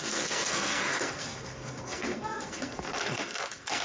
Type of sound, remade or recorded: remade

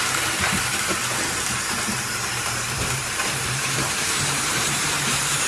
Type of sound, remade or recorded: remade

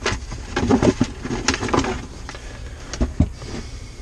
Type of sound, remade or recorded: recorded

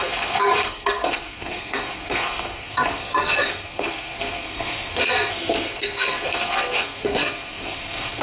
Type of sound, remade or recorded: remade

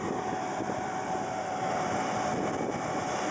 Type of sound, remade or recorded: remade